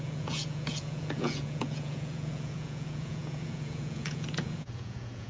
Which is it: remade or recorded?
remade